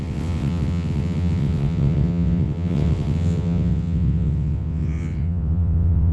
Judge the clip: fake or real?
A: fake